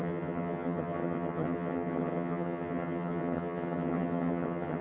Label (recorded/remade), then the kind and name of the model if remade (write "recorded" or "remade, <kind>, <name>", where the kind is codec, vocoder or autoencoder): remade, vocoder, HiFi-GAN